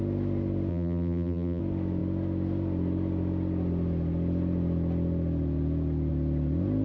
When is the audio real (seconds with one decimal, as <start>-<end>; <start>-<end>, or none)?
0.0-0.7; 1.6-6.8